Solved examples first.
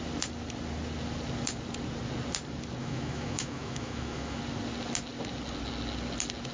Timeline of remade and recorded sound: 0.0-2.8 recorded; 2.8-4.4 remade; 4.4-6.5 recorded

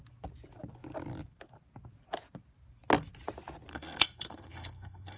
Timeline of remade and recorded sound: 0.0-3.7 recorded; 3.7-5.2 remade